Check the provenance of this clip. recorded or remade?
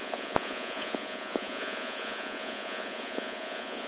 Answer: remade